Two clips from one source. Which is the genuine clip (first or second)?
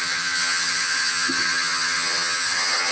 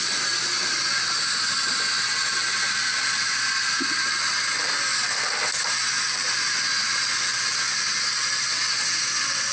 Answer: second